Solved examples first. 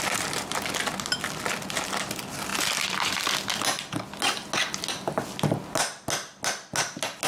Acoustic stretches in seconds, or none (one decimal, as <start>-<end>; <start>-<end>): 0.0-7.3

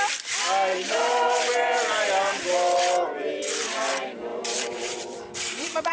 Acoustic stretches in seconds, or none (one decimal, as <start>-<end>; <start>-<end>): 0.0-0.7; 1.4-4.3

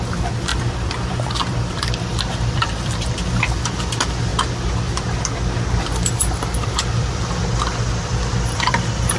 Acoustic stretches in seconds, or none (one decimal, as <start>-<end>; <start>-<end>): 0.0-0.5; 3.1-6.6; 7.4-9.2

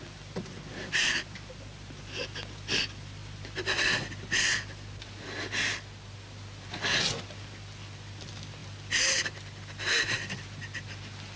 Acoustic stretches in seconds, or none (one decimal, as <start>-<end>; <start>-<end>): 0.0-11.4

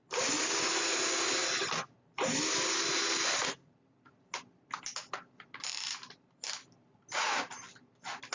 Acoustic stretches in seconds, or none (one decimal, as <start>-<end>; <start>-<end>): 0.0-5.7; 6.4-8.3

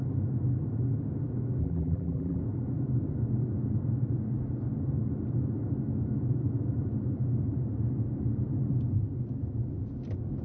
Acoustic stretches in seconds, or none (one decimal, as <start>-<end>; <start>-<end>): 0.0-1.6; 2.4-10.4

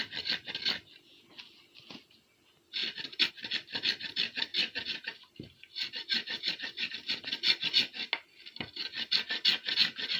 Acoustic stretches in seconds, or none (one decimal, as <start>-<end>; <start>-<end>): 0.0-2.8; 3.3-4.5; 6.9-10.2

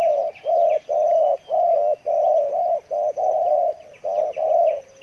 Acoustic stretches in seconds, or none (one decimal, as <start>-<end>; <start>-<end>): 0.0-5.0